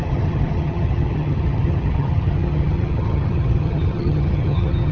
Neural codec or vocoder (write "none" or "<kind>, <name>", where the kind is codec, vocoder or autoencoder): vocoder, HiFi-GAN